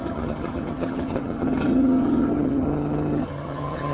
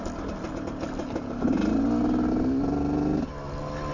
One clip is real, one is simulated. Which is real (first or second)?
second